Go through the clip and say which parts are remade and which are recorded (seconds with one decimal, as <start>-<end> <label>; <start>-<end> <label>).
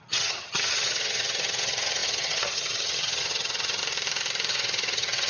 0.0-3.8 remade; 3.8-4.5 recorded; 4.5-5.3 remade